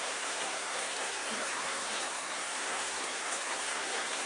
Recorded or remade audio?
remade